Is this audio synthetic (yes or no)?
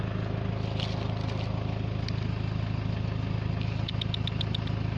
no